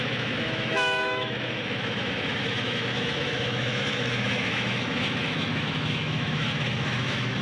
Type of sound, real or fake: fake